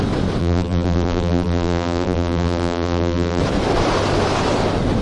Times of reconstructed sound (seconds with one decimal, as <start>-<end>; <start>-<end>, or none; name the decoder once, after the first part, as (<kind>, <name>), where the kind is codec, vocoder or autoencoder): 0.4-3.4 (vocoder, BigVGAN v2)